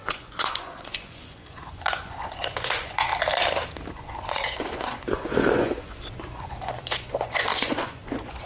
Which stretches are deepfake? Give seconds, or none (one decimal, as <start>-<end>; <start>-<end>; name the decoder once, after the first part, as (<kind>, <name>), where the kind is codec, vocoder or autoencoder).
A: 0.0-3.1 (vocoder, Vocos); 3.9-8.4